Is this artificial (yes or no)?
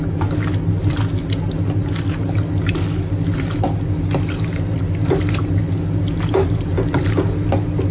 no